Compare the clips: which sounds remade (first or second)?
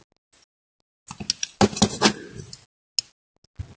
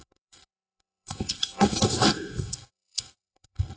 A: second